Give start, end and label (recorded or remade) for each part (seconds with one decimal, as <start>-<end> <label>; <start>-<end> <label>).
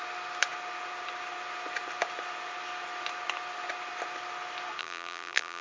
0.0-4.8 recorded; 4.8-5.6 remade